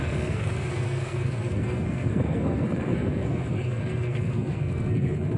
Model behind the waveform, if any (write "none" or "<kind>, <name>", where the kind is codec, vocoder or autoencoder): codec, SNAC